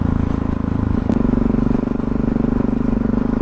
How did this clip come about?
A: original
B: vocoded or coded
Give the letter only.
A